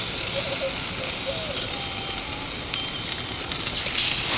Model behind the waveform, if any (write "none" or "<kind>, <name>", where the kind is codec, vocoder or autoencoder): none